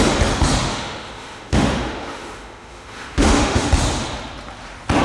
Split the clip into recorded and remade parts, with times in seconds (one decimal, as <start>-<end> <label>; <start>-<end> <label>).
0.0-0.7 recorded; 0.7-3.7 remade; 3.7-5.0 recorded